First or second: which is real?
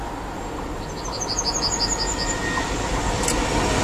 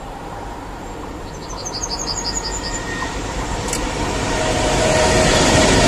first